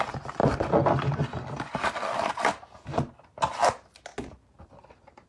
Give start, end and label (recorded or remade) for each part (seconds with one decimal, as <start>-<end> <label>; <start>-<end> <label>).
0.0-5.3 recorded